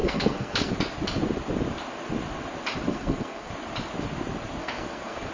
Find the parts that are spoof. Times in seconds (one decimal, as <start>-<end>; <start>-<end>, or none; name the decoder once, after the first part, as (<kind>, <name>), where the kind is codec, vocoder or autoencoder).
0.0-0.7 (codec, SNAC); 2.9-3.5; 4.6-5.3